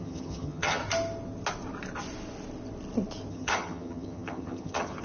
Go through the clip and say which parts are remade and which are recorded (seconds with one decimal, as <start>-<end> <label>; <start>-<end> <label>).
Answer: 0.0-0.8 remade; 0.8-3.3 recorded; 3.3-5.0 remade